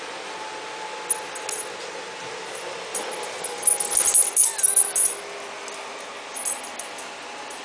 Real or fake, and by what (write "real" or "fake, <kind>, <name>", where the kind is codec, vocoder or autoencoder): real